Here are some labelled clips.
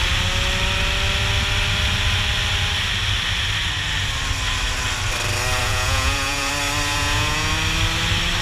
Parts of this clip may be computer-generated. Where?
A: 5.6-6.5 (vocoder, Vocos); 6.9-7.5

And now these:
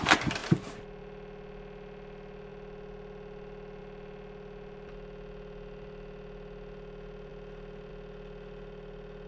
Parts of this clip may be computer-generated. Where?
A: none

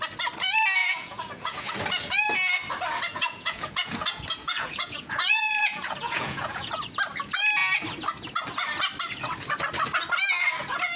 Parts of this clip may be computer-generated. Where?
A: 0.8-1.7 (vocoder, Vocos); 3.1-6.7

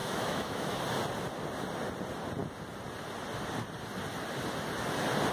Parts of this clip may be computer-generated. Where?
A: 0.0-0.8 (autoencoder, DAC-VAE)

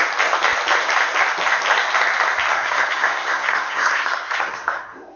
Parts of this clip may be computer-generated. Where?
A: 2.5-5.2 (codec, SNAC)

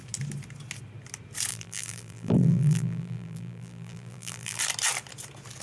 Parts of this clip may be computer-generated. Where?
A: 1.5-4.6 (vocoder, BigVGAN v2)

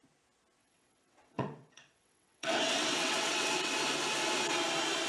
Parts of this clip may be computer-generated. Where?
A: 0.6-3.7 (vocoder, WaveNeXt)

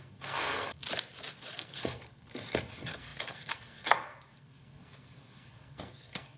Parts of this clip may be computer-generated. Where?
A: 0.0-0.8 (codec, SNAC); 1.3-6.4